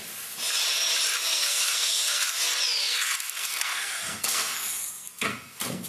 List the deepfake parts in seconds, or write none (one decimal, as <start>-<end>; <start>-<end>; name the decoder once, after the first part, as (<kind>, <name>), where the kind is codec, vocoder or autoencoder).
1.2-2.4 (codec, SNAC); 2.8-5.9